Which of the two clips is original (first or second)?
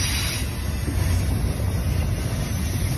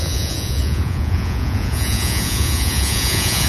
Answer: first